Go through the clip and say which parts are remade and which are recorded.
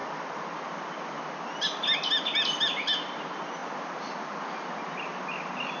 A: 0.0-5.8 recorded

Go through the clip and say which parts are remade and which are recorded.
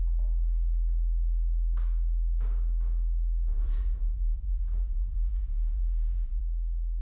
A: 0.0-3.5 recorded; 3.5-6.4 remade; 6.4-7.0 recorded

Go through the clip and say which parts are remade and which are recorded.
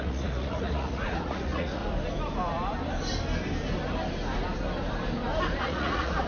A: 0.0-1.8 remade; 1.8-5.6 recorded; 5.6-6.3 remade